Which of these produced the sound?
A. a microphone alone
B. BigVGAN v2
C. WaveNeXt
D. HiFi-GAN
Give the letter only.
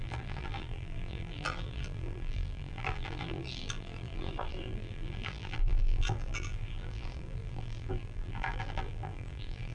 B